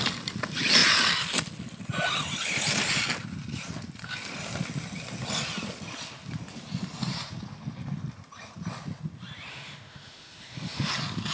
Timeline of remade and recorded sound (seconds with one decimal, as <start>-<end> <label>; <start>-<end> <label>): 0.0-9.5 recorded; 9.5-10.9 remade; 10.9-11.3 recorded